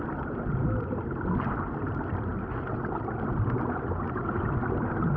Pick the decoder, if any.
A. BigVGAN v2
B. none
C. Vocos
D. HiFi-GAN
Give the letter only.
B